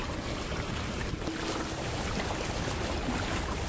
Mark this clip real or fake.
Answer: real